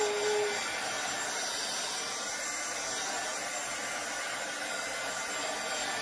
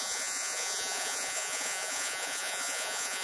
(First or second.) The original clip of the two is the first